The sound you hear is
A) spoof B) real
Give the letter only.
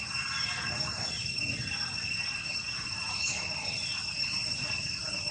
A